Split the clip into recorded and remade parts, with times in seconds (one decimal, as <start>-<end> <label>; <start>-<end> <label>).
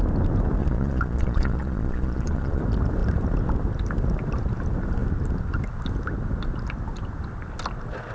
0.0-0.6 recorded; 0.6-2.6 remade; 2.6-8.1 recorded